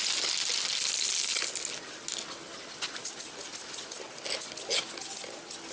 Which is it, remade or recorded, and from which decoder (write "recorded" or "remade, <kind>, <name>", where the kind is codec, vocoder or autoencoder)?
recorded